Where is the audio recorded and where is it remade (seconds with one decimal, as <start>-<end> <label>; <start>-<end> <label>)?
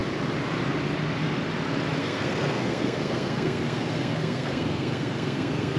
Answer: 0.0-2.0 recorded; 2.0-5.8 remade